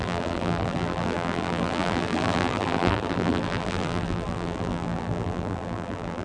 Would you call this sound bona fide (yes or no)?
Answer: no